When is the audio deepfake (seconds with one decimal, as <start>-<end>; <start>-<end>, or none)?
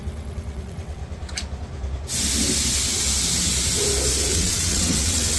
0.0-1.0; 4.2-5.4